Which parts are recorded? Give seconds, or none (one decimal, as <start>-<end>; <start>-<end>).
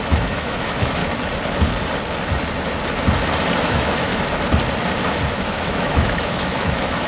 1.0-3.6; 4.1-5.3